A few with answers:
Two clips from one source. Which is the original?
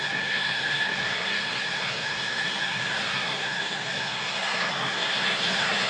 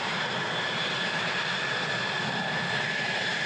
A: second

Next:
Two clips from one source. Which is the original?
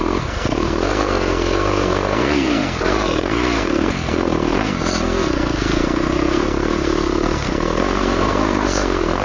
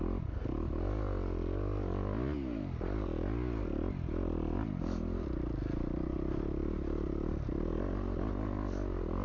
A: second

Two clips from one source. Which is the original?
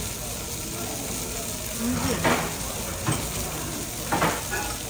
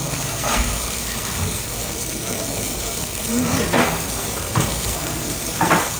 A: first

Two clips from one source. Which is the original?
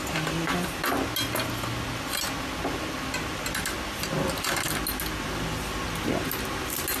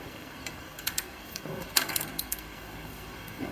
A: first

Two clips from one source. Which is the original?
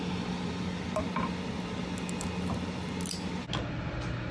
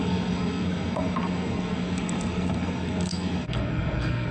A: first